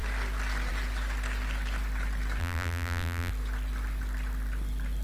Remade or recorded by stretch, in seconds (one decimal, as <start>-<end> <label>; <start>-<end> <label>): 0.0-2.4 recorded; 2.4-3.3 remade; 3.3-5.0 recorded